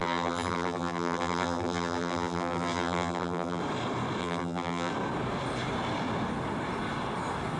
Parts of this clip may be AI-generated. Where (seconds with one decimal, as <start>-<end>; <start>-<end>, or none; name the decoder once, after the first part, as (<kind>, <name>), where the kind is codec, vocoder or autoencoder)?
0.0-3.6 (vocoder, BigVGAN v2); 4.2-4.9